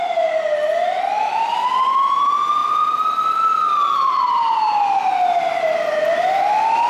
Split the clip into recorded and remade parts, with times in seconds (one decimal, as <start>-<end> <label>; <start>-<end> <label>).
0.0-6.9 recorded